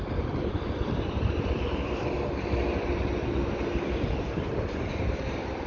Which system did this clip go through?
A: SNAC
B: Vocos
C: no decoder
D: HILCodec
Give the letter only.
C